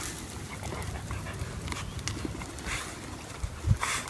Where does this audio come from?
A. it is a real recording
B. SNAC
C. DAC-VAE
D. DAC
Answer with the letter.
A